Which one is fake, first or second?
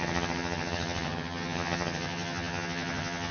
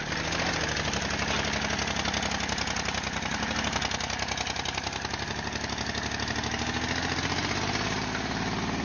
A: first